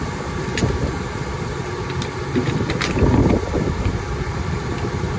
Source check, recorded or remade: recorded